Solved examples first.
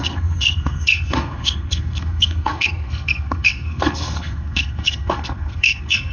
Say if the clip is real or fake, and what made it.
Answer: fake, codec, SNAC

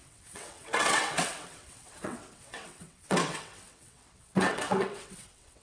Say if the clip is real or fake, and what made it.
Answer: fake, vocoder, WaveNeXt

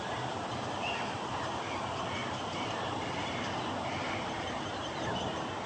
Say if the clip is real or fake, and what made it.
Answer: real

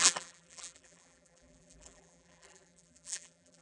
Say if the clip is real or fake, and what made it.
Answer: fake, vocoder, BigVGAN v2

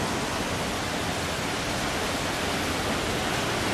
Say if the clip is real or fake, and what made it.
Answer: real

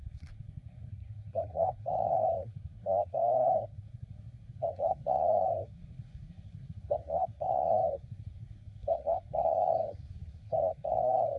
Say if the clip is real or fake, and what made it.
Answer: fake, codec, SNAC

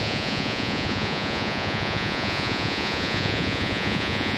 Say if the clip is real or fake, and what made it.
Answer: fake, vocoder, Vocos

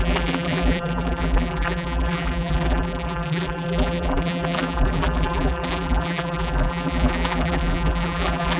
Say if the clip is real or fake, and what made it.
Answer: fake, vocoder, BigVGAN v2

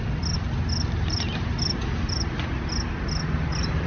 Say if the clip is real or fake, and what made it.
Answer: real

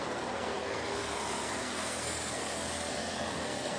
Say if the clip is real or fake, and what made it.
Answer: fake, codec, SNAC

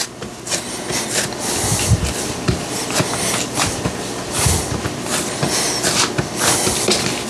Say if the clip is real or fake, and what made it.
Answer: real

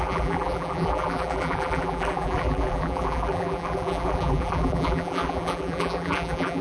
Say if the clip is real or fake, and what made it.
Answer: fake, vocoder, BigVGAN v2